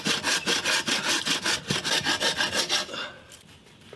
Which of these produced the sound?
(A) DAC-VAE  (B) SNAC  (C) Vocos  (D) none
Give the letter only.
D